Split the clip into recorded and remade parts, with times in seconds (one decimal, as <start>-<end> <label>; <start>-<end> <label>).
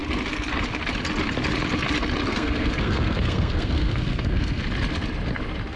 0.0-2.3 recorded; 2.3-4.6 remade; 4.6-5.8 recorded